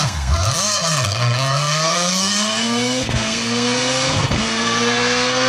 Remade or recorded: remade